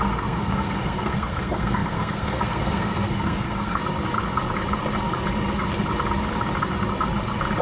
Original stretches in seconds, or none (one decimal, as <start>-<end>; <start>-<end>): 3.8-7.6